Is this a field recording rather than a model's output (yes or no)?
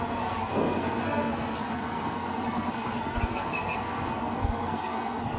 no